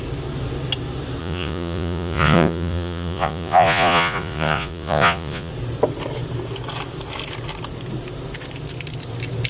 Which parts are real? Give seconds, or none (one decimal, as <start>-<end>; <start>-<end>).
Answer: 0.0-1.2; 5.5-9.5